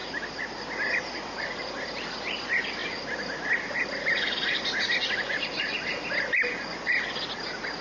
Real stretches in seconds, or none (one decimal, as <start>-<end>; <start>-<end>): 2.0-2.8; 7.2-7.8